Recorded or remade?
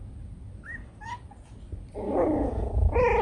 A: remade